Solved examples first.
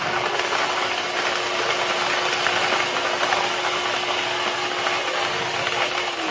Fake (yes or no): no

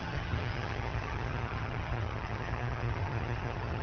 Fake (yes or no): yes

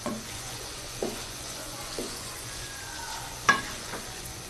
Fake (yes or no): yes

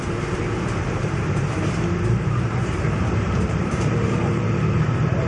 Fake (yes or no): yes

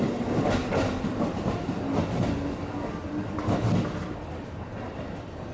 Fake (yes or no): no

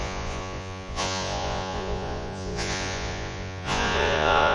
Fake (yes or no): yes